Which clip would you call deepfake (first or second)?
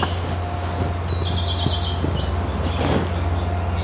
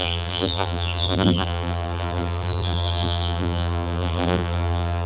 second